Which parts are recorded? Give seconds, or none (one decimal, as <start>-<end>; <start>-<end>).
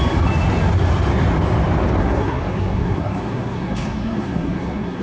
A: 0.0-2.0